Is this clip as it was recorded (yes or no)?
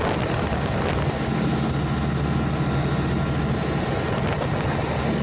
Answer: yes